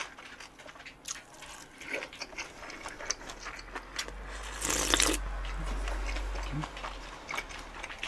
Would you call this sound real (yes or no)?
yes